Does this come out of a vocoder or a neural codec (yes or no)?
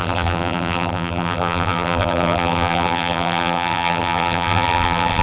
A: yes